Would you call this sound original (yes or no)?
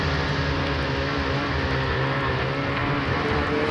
yes